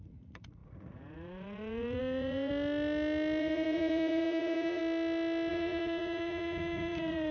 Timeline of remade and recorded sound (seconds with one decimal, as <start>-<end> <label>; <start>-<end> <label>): 0.0-2.5 remade; 2.5-3.4 recorded; 3.4-4.8 remade; 4.8-5.5 recorded; 5.5-7.3 remade